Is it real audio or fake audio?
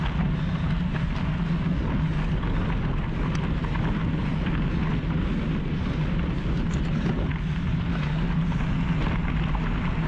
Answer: real